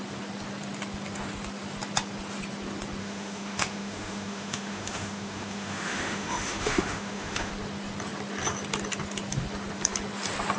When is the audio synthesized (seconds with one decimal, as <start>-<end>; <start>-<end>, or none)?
3.0-7.5